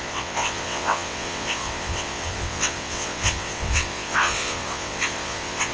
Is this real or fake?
fake